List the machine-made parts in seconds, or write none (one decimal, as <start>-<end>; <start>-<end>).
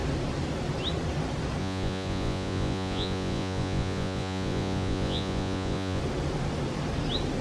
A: 1.6-6.0